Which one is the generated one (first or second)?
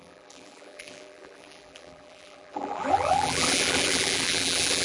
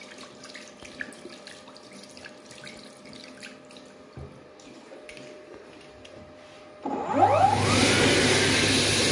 first